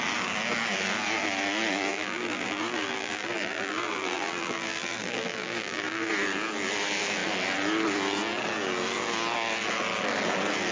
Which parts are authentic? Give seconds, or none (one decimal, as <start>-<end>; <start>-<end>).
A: 0.0-1.9; 6.1-10.7